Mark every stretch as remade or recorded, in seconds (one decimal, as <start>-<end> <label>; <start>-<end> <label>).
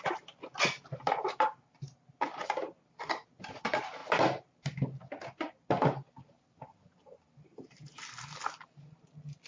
0.0-9.5 recorded